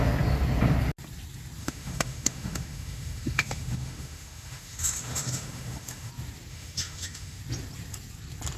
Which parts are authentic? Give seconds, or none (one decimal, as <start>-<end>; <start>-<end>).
0.0-1.6; 6.1-6.5; 7.4-8.6